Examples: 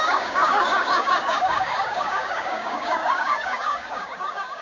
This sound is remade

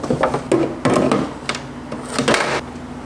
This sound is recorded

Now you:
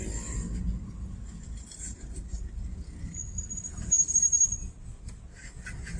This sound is recorded